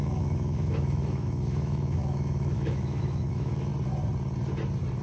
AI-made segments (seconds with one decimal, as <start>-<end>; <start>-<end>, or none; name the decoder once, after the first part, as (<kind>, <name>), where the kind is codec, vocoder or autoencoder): 0.0-3.7 (autoencoder, DAC-VAE)